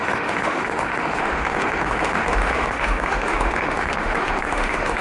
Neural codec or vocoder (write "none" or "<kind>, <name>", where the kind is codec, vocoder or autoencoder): autoencoder, DAC-VAE